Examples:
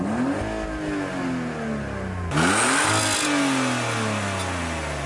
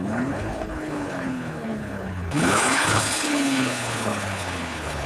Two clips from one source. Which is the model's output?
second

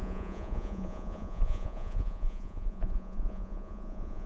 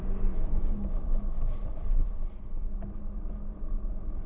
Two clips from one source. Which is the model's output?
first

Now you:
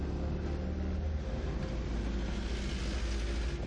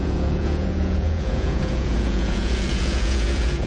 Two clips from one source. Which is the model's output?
second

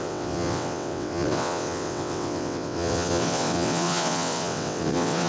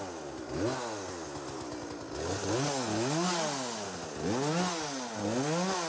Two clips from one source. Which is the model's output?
first